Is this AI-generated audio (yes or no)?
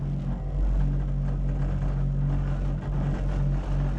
no